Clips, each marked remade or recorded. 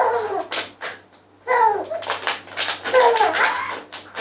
recorded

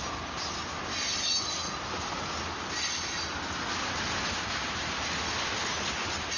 recorded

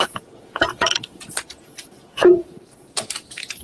remade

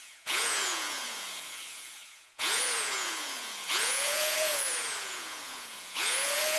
remade